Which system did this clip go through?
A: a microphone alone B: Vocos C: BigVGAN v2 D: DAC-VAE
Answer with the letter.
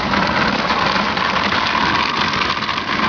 A